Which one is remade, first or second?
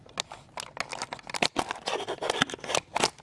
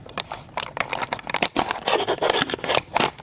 second